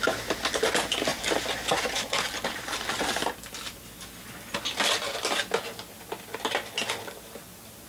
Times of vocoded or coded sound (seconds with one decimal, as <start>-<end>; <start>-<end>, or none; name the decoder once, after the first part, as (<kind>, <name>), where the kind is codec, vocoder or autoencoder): none